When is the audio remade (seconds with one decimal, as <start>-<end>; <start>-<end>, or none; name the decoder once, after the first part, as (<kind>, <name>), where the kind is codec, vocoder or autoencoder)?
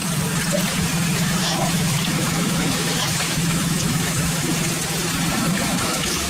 1.4-4.5 (autoencoder, DAC-VAE); 5.4-6.3